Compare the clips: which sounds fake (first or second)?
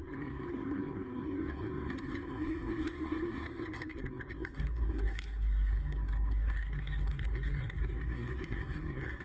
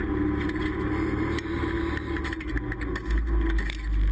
first